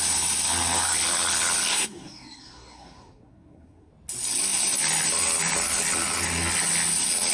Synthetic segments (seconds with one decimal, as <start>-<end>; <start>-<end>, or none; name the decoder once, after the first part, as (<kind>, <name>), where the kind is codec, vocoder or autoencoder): 1.7-3.9 (codec, SNAC)